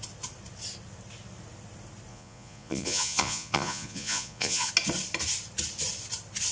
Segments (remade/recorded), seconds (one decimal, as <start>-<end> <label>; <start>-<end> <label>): 0.0-2.1 recorded; 2.1-4.7 remade; 4.7-6.5 recorded